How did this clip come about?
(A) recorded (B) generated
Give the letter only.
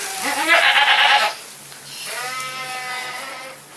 A